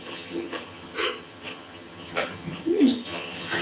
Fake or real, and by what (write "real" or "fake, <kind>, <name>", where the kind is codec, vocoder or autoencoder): fake, vocoder, HiFi-GAN